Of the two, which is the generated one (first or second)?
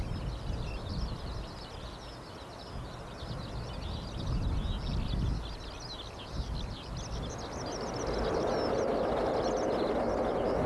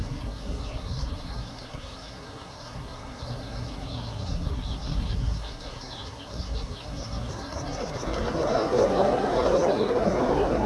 second